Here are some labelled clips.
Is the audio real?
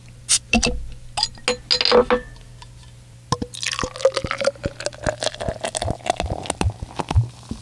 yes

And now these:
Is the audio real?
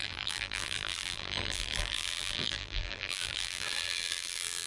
no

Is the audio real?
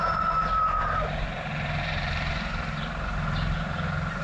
no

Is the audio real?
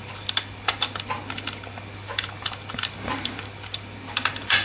no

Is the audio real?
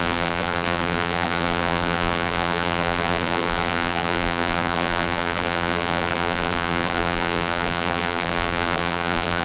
no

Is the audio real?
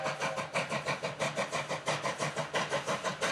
yes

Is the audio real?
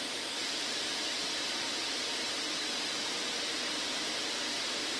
no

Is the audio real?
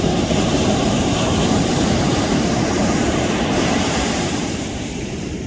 no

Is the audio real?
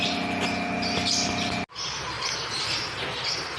yes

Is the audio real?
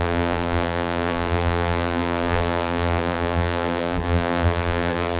no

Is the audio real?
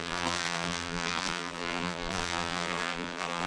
no